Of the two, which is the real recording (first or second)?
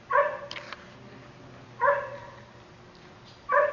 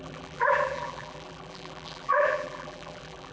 first